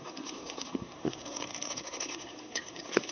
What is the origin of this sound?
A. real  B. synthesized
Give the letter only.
B